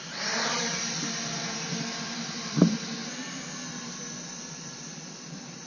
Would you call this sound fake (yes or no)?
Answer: yes